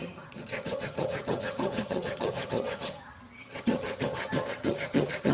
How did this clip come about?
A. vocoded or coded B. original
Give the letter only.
A